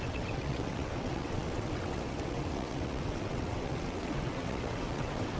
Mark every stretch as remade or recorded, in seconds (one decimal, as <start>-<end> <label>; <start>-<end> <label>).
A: 0.0-5.4 remade